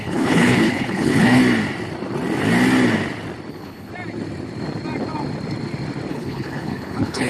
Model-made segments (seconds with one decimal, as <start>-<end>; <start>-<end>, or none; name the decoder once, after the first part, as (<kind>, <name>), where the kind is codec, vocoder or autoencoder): 0.0-1.4 (codec, HILCodec); 3.5-3.9; 6.1-7.3